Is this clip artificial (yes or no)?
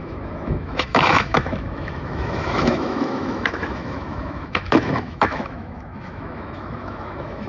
yes